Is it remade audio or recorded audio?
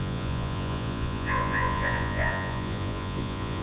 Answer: remade